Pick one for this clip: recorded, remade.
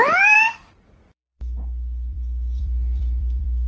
remade